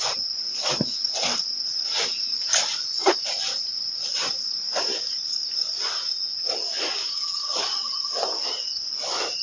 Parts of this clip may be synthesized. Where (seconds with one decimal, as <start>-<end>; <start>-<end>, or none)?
3.7-5.4